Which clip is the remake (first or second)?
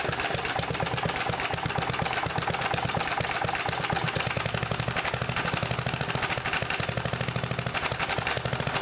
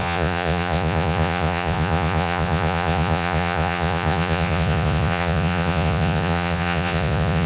second